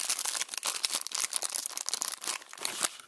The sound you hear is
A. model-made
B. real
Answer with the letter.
B